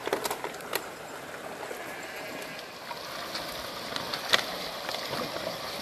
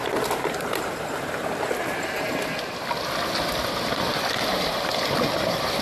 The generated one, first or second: second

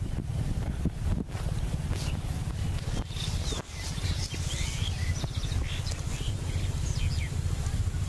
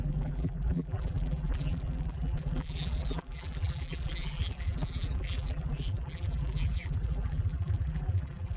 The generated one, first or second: second